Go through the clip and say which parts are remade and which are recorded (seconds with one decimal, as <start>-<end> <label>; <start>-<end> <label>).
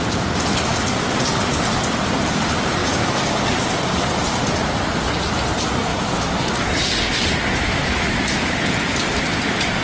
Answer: 0.0-2.8 recorded; 2.8-3.4 remade; 3.4-5.9 recorded; 5.9-6.7 remade; 6.7-7.7 recorded; 7.7-8.5 remade; 8.5-9.8 recorded